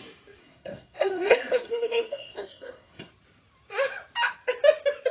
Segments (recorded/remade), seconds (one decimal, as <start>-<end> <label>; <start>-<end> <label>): 0.0-0.4 recorded; 0.4-3.1 remade; 3.1-5.1 recorded